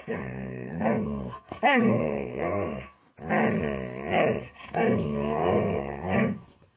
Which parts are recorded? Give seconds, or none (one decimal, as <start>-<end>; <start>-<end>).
3.0-4.4